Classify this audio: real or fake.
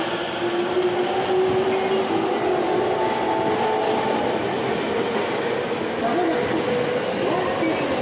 real